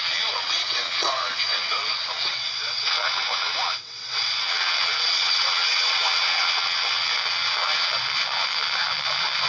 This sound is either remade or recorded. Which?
remade